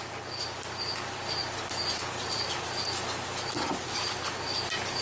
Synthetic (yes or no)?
yes